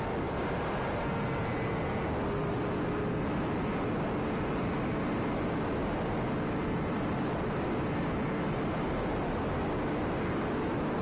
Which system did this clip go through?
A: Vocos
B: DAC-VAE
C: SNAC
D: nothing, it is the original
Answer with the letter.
D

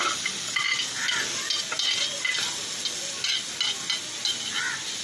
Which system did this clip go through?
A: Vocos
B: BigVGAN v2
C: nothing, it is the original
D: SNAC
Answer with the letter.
C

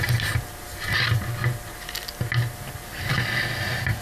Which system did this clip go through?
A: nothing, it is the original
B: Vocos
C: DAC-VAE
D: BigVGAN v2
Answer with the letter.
A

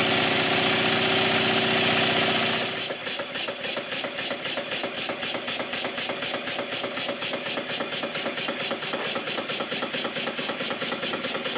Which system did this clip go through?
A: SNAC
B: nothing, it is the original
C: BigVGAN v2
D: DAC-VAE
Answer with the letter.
B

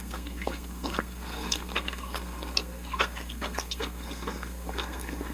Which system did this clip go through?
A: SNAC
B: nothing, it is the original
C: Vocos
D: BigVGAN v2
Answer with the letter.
A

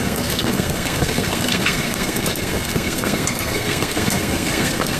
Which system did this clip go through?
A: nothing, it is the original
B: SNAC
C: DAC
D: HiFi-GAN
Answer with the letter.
B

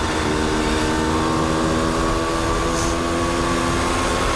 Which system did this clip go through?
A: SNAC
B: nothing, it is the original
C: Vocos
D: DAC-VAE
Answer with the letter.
B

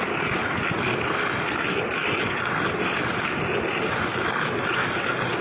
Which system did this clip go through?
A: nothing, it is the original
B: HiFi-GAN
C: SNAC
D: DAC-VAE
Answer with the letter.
A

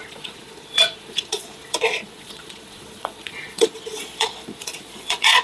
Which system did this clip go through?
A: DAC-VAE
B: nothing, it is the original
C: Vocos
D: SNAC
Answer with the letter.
C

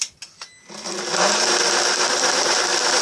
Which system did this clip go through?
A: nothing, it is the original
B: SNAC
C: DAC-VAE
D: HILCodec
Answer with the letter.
A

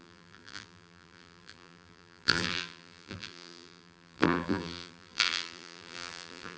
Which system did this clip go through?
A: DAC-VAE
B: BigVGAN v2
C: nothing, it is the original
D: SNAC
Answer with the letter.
B